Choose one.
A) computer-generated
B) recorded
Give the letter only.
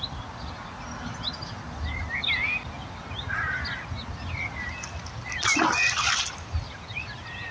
B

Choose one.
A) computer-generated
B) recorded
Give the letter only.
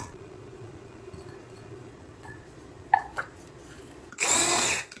A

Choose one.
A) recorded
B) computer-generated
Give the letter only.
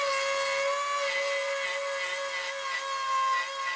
A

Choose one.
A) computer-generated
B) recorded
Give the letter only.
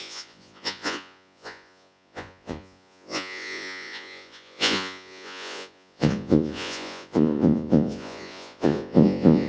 A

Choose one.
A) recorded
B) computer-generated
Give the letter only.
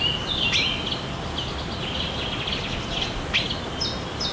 A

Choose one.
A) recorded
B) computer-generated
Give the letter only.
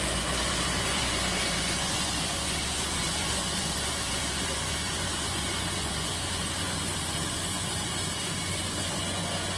B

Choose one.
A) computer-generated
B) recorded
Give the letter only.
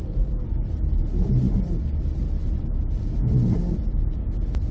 B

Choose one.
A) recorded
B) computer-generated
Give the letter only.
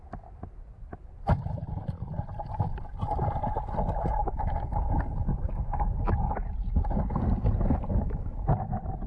A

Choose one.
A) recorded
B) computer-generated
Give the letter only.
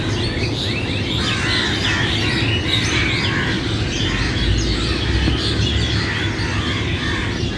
A